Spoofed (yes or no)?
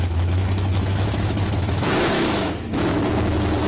yes